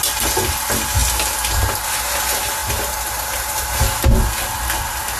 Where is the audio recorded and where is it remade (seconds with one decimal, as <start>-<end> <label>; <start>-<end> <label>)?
0.0-2.6 recorded; 2.6-3.8 remade; 3.8-5.2 recorded